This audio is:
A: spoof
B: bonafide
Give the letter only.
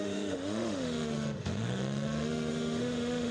A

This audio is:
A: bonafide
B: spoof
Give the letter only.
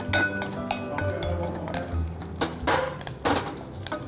A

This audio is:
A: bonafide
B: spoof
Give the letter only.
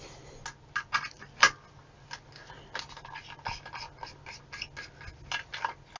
A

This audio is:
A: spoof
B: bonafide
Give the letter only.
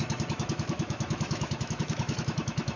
A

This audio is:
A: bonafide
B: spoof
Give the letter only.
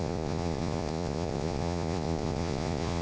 B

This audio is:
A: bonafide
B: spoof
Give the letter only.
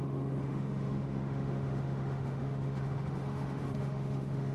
B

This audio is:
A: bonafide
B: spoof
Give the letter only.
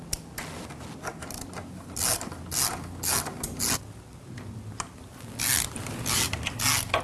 A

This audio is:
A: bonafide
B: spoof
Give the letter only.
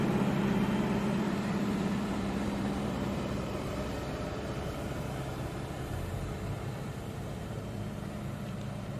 B